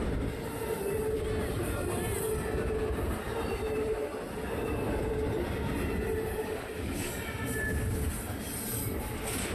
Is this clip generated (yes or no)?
no